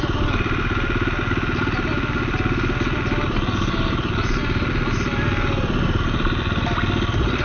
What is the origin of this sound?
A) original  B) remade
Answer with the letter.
A